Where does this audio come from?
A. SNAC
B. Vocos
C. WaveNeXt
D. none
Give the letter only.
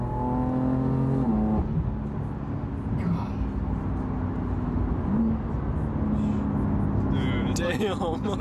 D